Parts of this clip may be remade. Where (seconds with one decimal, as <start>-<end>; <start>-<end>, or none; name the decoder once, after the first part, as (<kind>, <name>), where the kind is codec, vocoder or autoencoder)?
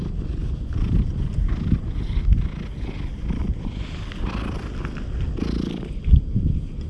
none